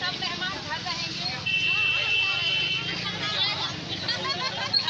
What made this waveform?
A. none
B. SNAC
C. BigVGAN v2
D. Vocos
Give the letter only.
A